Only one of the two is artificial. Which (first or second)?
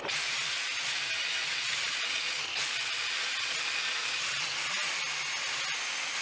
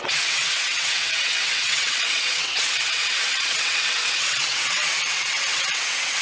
second